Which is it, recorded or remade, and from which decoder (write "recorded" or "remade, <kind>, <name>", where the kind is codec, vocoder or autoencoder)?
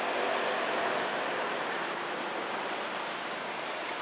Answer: recorded